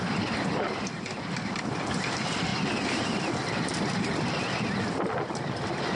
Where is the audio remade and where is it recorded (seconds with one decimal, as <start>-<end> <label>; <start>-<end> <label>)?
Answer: 0.0-6.0 recorded